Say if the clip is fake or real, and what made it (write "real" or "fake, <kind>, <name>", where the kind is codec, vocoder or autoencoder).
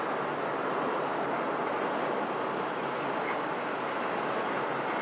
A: real